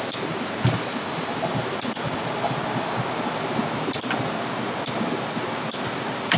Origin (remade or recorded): recorded